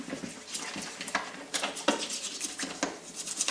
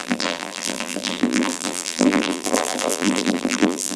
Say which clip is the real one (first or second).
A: first